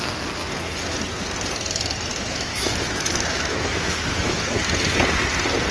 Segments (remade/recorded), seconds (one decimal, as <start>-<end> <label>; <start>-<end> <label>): 0.0-2.1 recorded; 2.1-4.6 remade; 4.6-5.7 recorded